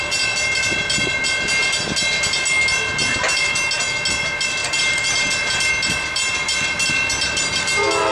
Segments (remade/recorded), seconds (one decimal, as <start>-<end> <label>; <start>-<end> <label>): 0.0-4.6 recorded; 4.6-5.7 remade; 5.7-8.1 recorded